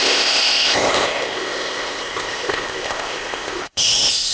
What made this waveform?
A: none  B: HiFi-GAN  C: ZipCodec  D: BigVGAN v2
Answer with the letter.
C